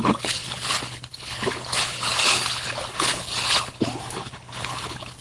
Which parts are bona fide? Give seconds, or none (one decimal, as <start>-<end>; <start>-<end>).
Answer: none